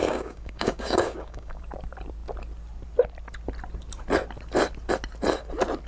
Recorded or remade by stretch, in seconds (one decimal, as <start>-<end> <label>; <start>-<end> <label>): 0.0-1.6 remade; 1.6-5.9 recorded